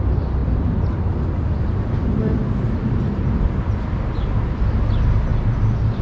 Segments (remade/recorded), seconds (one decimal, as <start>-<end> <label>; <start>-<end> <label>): 0.0-6.0 recorded